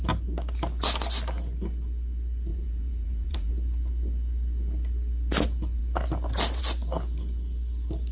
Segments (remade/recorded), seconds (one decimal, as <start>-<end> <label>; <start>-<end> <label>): 0.0-2.5 recorded; 2.5-3.5 remade; 3.5-8.1 recorded